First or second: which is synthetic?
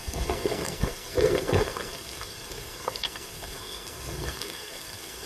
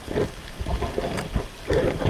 first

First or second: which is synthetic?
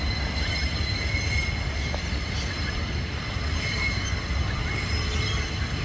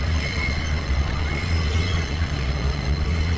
second